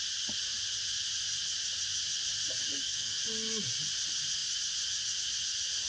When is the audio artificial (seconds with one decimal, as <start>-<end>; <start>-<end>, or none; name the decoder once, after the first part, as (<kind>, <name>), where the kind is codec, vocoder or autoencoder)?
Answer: 2.6-3.2 (codec, SNAC)